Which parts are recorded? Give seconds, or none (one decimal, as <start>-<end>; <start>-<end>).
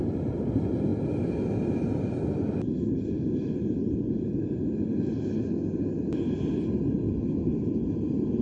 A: 0.0-8.4